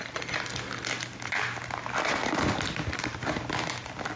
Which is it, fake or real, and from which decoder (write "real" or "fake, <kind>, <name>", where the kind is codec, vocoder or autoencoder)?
real